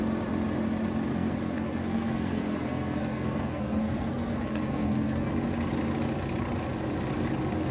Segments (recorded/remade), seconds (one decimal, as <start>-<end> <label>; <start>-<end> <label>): 0.0-1.1 recorded; 1.1-5.3 remade; 5.3-7.7 recorded